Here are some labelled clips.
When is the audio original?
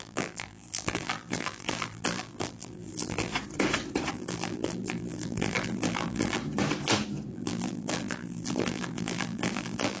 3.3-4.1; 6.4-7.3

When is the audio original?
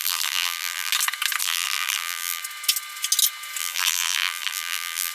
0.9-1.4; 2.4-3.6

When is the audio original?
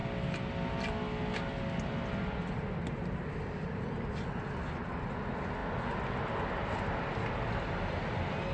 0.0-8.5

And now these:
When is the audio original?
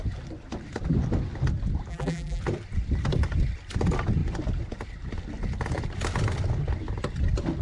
0.0-1.9; 2.4-7.6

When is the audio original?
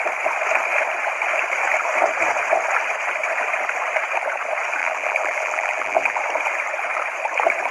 0.0-4.8; 6.2-7.7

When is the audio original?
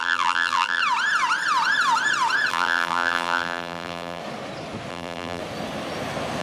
0.8-2.5; 4.2-4.9; 5.4-6.4